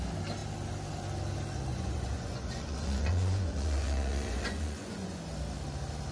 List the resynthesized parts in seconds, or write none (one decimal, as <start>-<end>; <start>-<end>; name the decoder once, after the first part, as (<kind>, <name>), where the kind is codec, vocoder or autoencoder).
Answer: 1.7-5.2 (vocoder, Vocos)